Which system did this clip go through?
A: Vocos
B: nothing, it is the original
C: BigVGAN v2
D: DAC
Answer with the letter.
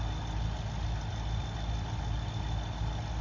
B